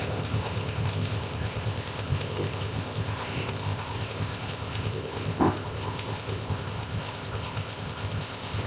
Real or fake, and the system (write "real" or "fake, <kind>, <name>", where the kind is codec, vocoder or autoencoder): fake, codec, ZipCodec